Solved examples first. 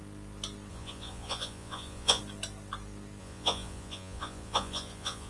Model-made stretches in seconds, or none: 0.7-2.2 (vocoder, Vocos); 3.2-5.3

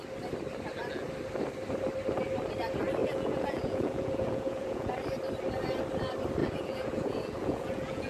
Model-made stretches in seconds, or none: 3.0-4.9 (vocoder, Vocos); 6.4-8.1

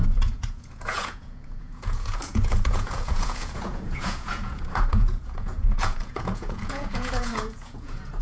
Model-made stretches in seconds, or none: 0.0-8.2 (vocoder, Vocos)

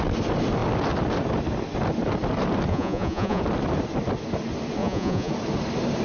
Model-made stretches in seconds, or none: 2.7-3.4 (vocoder, Vocos); 4.8-5.3